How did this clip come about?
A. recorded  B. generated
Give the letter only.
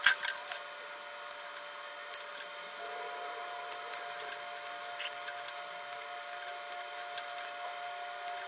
A